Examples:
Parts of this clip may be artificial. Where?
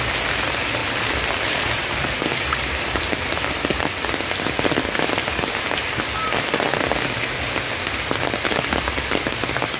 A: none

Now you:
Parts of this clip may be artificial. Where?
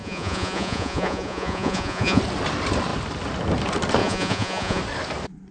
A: 0.0-2.2; 4.0-4.8